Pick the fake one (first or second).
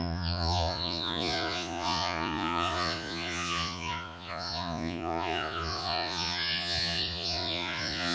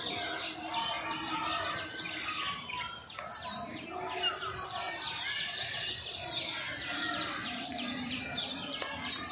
first